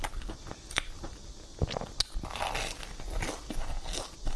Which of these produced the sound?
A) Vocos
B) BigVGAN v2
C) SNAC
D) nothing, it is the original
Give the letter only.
D